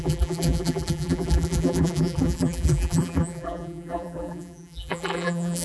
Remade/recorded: remade